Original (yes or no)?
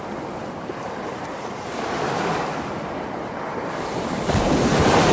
yes